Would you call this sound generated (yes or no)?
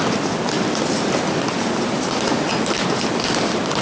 no